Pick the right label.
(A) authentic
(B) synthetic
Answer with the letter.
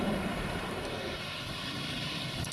A